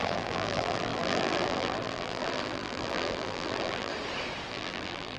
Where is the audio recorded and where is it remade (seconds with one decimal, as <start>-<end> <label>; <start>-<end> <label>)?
0.0-3.9 remade; 3.9-4.5 recorded; 4.5-5.2 remade